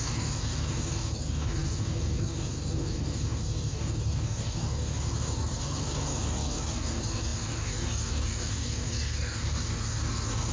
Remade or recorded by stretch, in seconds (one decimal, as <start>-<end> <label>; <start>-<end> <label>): 0.0-10.5 remade

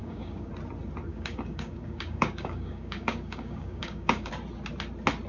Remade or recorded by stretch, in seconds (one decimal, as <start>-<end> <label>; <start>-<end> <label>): 0.0-0.5 remade; 0.5-1.1 recorded; 1.1-4.3 remade; 4.3-5.3 recorded

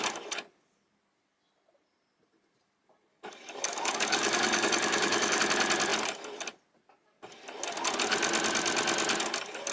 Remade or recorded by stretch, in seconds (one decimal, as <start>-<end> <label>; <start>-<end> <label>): 0.0-3.1 recorded; 3.1-5.4 remade; 5.4-9.7 recorded

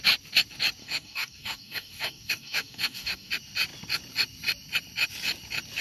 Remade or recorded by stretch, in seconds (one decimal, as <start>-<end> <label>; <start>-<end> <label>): 0.0-0.8 recorded; 0.8-3.3 remade; 3.3-5.8 recorded

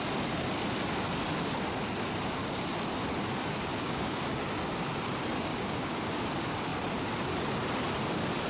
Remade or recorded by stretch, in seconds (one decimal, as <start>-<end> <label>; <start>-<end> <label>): 0.0-3.7 recorded; 3.7-4.2 remade; 4.2-5.5 recorded; 5.5-6.2 remade; 6.2-8.5 recorded

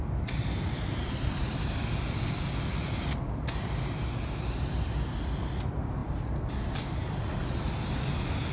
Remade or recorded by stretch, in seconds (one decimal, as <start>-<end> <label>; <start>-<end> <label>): 0.0-8.5 recorded

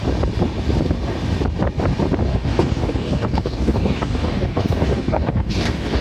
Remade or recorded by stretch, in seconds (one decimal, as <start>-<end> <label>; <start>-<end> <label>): 0.0-2.3 recorded; 2.3-6.0 remade

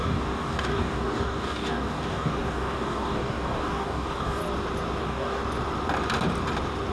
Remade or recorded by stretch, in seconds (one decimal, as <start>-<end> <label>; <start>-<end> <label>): 0.0-4.4 remade; 4.4-5.0 recorded; 5.0-5.4 remade; 5.4-6.9 recorded